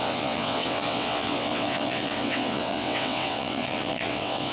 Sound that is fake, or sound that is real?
fake